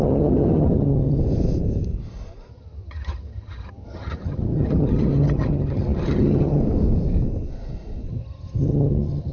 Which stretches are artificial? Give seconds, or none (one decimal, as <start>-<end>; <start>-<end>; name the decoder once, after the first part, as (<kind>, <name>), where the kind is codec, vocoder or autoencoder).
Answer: 0.0-1.2 (vocoder, HiFi-GAN); 2.5-6.6; 8.1-9.3

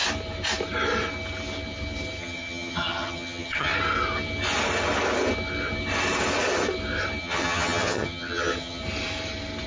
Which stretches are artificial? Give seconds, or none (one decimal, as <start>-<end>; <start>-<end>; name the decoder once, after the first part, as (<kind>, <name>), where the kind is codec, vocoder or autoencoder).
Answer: 2.2-3.7 (vocoder, HiFi-GAN); 7.2-8.8

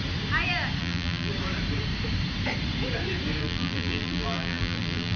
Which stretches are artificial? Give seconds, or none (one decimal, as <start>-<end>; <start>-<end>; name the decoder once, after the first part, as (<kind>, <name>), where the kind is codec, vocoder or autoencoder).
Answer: 0.8-1.3 (vocoder, BigVGAN v2); 3.4-5.2